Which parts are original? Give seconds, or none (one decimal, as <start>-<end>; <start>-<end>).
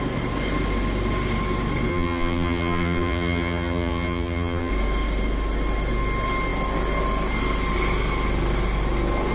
0.0-1.9; 4.7-9.3